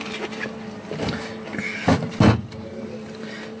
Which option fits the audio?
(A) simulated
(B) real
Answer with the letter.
B